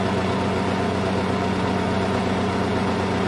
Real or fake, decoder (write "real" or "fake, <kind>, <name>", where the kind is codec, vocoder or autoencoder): fake, vocoder, Vocos